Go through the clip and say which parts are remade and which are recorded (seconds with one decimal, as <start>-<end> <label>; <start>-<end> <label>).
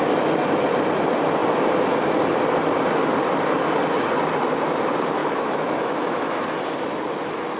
0.0-5.2 recorded; 5.2-6.4 remade; 6.4-7.6 recorded